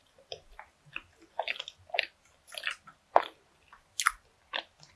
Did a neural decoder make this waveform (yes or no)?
no